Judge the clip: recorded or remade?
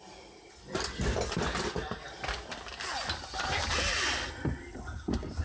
recorded